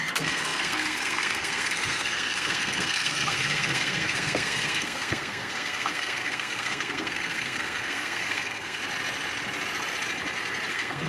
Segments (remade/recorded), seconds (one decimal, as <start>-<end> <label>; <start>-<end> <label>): 0.0-8.8 remade; 8.8-10.7 recorded; 10.7-11.1 remade